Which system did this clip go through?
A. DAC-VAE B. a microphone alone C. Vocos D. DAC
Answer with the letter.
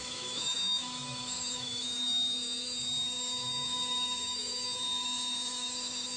A